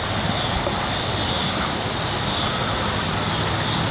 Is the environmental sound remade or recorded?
recorded